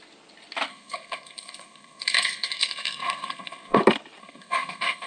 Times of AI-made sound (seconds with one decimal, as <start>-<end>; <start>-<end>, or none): 0.7-3.8; 4.2-5.1